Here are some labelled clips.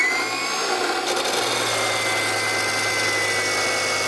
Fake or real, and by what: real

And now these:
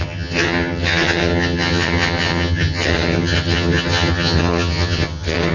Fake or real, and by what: fake, vocoder, HiFi-GAN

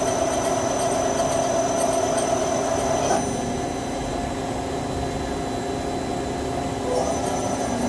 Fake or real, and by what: real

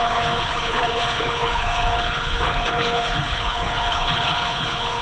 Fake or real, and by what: fake, codec, HILCodec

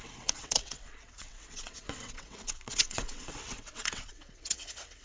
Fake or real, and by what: fake, vocoder, WaveNeXt